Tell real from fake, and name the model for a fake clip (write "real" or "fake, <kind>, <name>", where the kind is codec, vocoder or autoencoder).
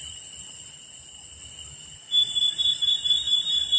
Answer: real